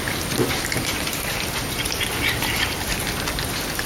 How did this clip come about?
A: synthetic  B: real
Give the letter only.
A